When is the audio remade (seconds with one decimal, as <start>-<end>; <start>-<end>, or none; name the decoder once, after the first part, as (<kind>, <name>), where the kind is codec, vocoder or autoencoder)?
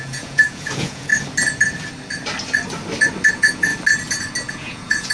0.0-1.1 (vocoder, Vocos); 3.3-3.7; 4.5-5.1